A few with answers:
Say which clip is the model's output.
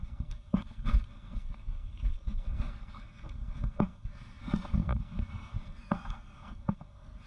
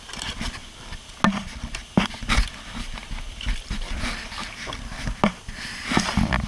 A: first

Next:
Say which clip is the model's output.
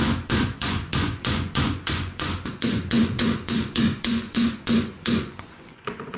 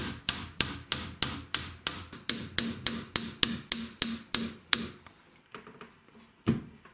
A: first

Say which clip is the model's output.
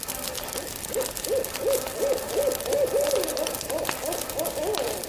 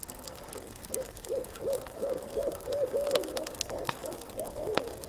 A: second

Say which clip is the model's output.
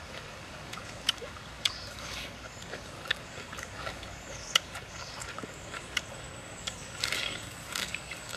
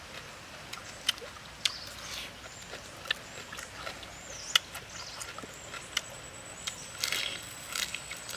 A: first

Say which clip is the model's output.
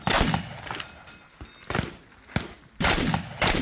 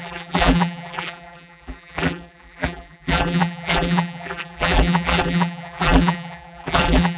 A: second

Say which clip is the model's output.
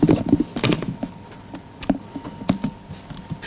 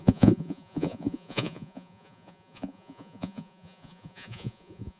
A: second